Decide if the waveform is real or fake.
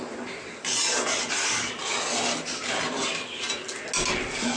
real